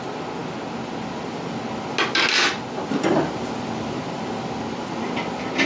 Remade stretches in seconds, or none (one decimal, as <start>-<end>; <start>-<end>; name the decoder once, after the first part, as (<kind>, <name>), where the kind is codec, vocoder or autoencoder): none